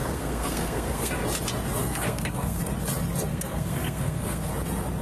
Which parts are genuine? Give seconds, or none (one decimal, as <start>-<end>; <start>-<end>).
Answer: 1.1-1.8; 2.6-3.3; 4.5-5.0